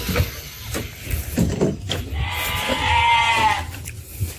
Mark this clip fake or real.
real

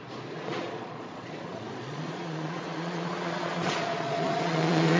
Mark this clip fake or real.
fake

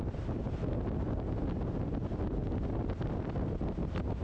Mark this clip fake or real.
real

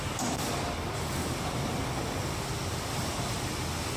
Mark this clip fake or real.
real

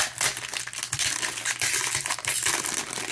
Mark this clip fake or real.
real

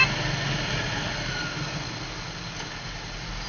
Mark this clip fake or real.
real